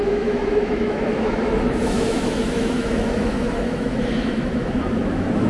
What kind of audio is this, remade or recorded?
remade